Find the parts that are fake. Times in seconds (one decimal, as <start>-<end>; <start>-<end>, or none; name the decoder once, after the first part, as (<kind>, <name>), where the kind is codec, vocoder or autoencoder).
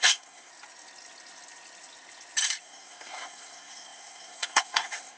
0.0-0.5 (codec, SNAC); 2.6-5.2